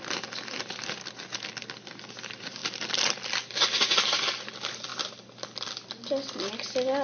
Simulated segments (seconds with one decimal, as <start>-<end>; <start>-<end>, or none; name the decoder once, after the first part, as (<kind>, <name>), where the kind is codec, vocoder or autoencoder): 2.6-3.6 (vocoder, BigVGAN v2); 4.9-6.5